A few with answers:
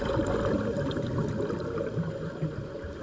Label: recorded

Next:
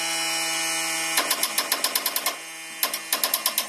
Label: recorded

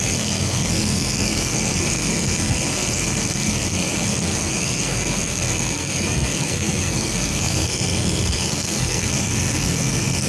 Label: remade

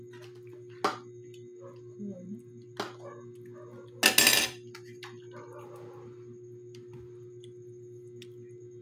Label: recorded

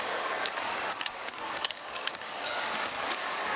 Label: remade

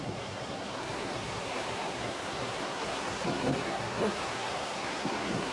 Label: remade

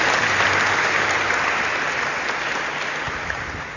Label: recorded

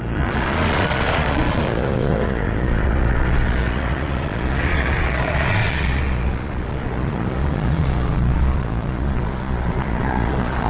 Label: remade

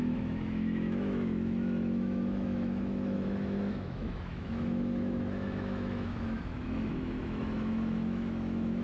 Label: remade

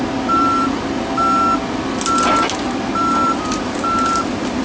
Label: recorded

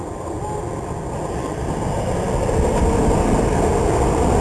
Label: recorded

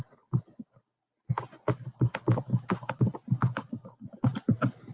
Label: recorded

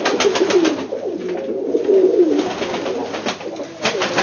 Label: remade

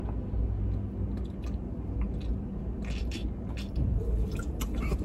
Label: recorded